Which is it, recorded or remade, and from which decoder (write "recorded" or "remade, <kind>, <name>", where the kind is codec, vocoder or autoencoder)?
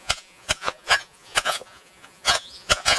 remade, vocoder, Vocos